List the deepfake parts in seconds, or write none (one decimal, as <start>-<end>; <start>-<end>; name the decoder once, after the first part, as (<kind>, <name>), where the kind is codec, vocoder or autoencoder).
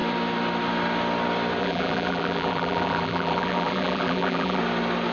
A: 1.6-4.6 (vocoder, BigVGAN v2)